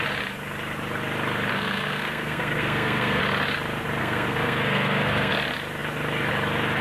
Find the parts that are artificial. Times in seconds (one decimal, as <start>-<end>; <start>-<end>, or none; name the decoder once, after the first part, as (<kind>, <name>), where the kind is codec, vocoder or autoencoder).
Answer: 1.5-3.2 (codec, SNAC); 4.0-5.3